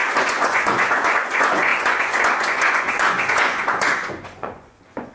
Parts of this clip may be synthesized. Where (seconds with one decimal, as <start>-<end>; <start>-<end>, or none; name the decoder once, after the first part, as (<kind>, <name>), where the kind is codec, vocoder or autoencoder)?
0.0-5.1 (vocoder, Vocos)